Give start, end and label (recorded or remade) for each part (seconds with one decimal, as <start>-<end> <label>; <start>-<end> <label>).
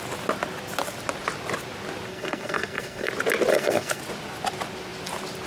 0.0-2.1 recorded; 2.1-3.1 remade; 3.1-3.5 recorded; 3.5-4.0 remade; 4.0-5.5 recorded